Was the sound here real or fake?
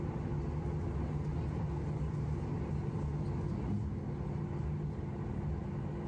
real